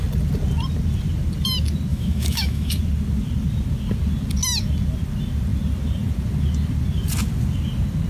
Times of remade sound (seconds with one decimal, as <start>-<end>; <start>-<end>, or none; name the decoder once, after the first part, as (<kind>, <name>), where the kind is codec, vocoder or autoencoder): 1.9-2.8 (autoencoder, DAC-VAE)